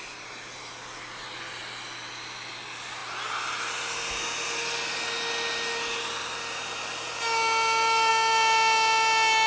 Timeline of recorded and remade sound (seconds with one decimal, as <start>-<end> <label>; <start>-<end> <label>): 0.0-9.5 recorded